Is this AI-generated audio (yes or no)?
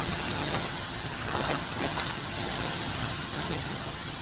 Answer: yes